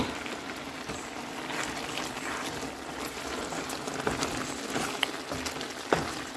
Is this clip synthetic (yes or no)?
no